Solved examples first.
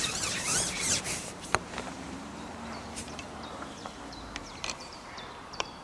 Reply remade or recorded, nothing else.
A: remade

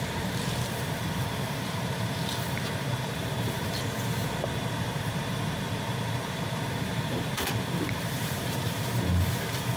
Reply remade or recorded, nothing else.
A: remade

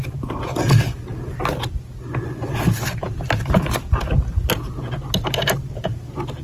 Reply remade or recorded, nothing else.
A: recorded